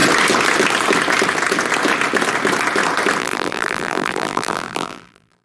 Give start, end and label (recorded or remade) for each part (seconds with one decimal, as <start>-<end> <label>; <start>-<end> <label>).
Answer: 0.0-3.2 recorded; 3.2-5.4 remade